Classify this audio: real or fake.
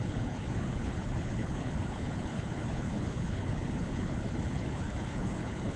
fake